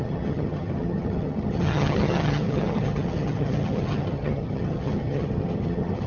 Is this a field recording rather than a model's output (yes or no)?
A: no